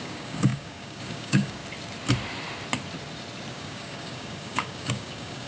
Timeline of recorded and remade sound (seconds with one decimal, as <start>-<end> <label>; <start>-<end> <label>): 0.0-1.6 remade; 1.6-3.5 recorded; 3.5-5.5 remade